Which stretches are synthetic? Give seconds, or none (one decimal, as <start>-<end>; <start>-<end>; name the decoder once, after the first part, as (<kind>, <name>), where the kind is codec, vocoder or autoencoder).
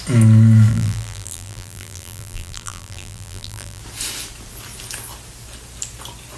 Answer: 0.7-3.8 (vocoder, BigVGAN v2)